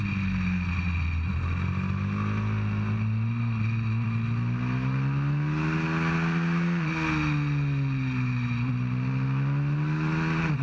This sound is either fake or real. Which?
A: real